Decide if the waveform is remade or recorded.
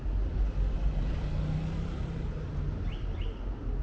recorded